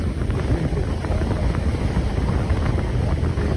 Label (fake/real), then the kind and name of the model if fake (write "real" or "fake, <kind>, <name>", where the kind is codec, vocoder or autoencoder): real